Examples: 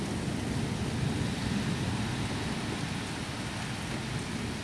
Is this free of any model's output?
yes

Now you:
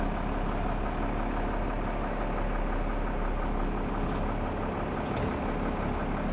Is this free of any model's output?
yes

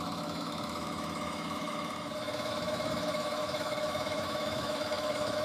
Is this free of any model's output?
no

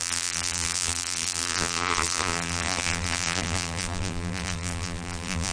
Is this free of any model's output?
no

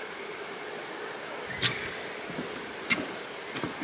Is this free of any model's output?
yes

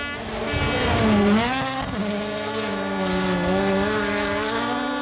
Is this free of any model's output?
yes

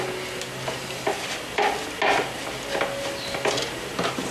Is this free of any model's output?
yes